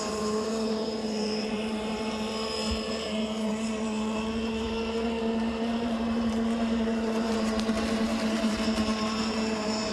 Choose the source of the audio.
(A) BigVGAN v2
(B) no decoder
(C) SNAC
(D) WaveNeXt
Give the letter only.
A